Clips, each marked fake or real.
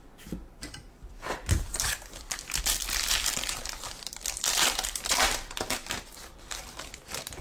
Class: fake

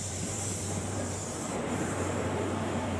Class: fake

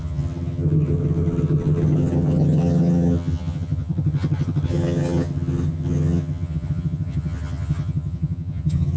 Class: fake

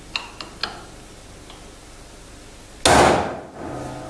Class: real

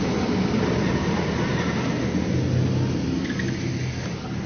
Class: real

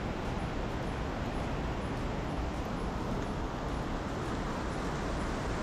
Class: real